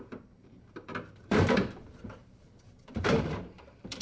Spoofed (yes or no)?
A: yes